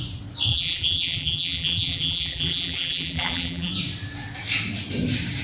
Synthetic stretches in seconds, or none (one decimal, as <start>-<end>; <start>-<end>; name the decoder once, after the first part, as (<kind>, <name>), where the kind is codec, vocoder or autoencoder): 0.5-3.7 (vocoder, BigVGAN v2)